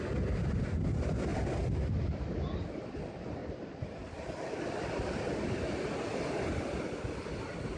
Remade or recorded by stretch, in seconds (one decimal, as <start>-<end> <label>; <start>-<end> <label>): 0.0-3.4 recorded; 3.4-5.9 remade; 5.9-7.8 recorded